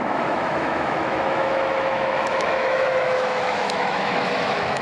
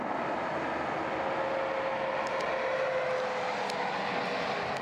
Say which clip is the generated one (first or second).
first